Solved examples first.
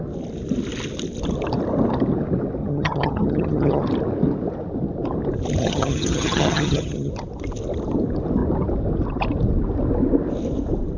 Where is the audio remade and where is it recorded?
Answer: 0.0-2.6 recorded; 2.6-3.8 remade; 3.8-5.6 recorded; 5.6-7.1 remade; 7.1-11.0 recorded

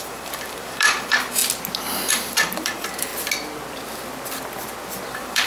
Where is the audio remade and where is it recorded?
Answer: 0.0-1.4 remade; 1.4-2.1 recorded; 2.1-3.1 remade; 3.1-5.1 recorded; 5.1-5.5 remade

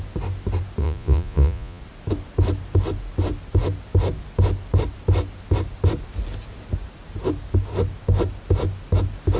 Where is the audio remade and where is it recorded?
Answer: 0.0-0.8 recorded; 0.8-1.8 remade; 1.8-9.4 recorded

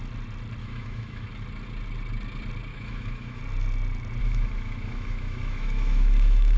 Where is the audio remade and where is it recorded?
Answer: 0.0-0.6 recorded; 0.6-1.3 remade; 1.3-2.7 recorded; 2.7-3.4 remade; 3.4-4.2 recorded; 4.2-6.6 remade

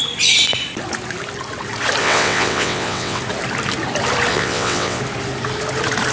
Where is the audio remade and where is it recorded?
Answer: 0.0-2.0 recorded; 2.0-3.2 remade; 3.2-4.3 recorded; 4.3-5.0 remade; 5.0-6.1 recorded

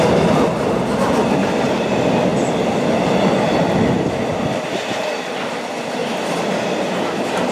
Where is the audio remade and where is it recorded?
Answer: 0.0-0.8 remade; 0.8-6.0 recorded; 6.0-6.6 remade; 6.6-7.5 recorded

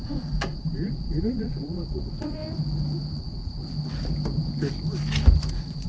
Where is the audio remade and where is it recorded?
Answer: 0.0-2.4 remade; 2.4-3.2 recorded; 3.2-3.6 remade; 3.6-5.5 recorded; 5.5-5.9 remade